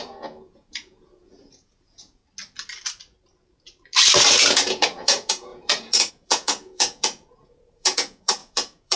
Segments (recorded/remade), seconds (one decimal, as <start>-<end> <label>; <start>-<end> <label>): 0.0-2.2 remade; 2.2-4.3 recorded; 4.3-9.0 remade